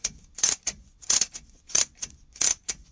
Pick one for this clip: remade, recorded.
remade